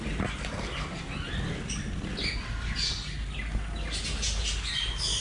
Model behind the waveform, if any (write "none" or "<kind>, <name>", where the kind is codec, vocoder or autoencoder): none